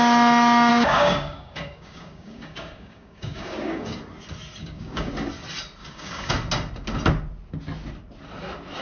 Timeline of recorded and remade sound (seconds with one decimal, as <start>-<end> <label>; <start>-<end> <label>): 0.0-0.7 recorded; 0.7-4.0 remade; 4.0-4.6 recorded; 4.6-5.1 remade; 5.1-5.8 recorded; 5.8-6.3 remade; 6.3-8.8 recorded